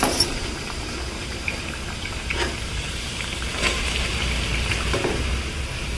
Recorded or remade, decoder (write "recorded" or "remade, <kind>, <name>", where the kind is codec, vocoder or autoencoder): remade, vocoder, BigVGAN v2